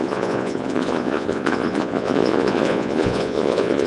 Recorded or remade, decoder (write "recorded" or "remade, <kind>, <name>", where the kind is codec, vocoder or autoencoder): remade, vocoder, Vocos